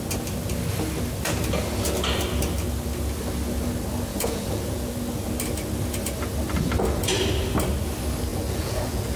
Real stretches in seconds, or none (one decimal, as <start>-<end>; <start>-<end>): 0.0-4.1; 4.9-8.3